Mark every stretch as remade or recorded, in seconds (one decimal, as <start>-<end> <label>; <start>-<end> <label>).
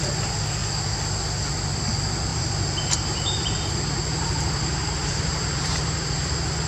0.0-2.3 recorded; 2.3-6.3 remade; 6.3-6.7 recorded